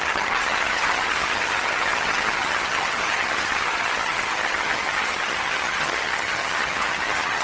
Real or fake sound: fake